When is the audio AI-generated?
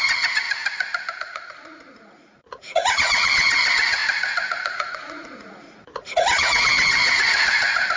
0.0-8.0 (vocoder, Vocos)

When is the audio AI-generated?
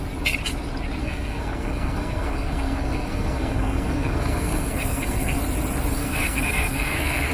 1.0-5.4 (codec, SNAC); 6.0-7.3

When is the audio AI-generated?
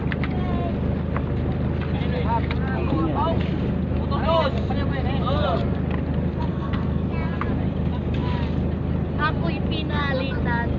6.5-7.1 (codec, SNAC)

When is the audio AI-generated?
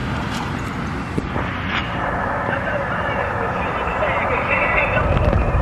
0.0-0.5 (vocoder, BigVGAN v2); 1.8-5.6